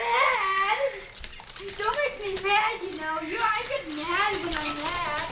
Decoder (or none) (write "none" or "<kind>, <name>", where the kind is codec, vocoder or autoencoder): none